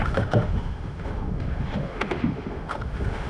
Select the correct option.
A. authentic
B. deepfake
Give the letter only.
B